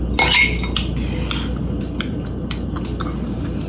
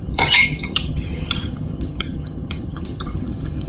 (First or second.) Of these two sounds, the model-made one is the second